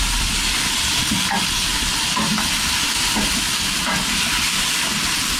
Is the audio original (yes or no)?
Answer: no